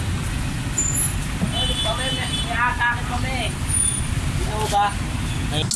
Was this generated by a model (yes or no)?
no